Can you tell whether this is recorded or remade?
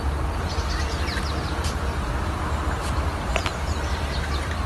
recorded